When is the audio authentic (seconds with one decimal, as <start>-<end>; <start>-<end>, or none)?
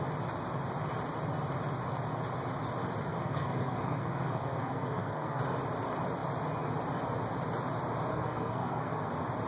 0.0-3.1; 5.4-8.1; 9.1-9.5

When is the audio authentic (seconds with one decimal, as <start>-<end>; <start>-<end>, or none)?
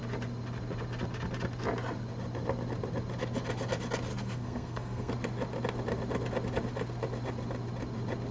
0.0-4.1; 5.1-8.3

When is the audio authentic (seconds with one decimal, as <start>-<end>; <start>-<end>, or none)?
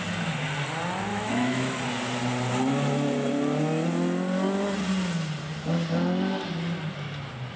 0.0-1.1; 1.8-7.6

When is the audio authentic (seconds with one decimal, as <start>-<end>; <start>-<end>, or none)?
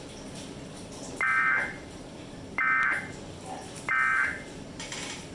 0.0-1.3; 3.1-4.1; 4.8-5.3